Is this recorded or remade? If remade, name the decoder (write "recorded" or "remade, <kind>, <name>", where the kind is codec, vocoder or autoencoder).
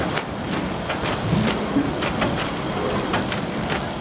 recorded